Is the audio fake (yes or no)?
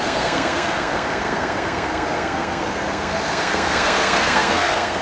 yes